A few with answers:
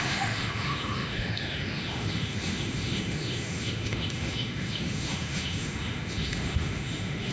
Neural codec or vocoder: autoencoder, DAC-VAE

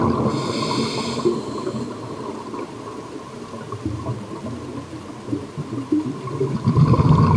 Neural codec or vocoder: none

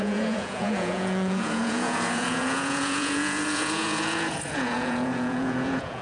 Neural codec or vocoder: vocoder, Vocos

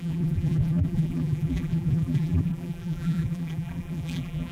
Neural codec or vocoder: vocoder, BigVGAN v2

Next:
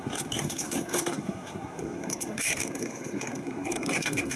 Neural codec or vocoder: codec, SNAC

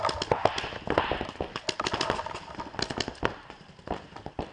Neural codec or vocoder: none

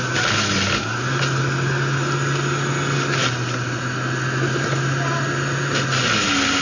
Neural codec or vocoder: none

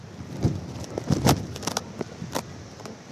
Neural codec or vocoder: none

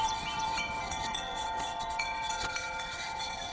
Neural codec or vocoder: vocoder, WaveNeXt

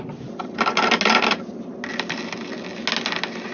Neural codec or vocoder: none